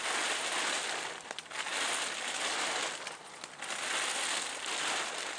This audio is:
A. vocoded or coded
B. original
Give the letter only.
B